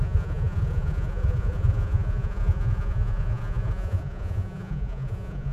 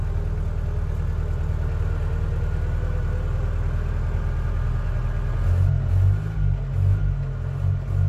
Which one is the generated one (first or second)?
first